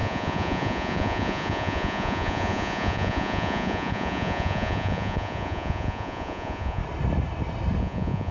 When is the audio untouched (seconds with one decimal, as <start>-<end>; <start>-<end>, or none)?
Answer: 6.8-7.8